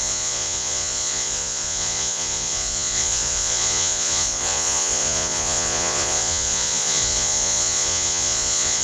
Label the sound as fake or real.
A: fake